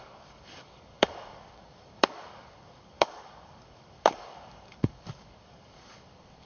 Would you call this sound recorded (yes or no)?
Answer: no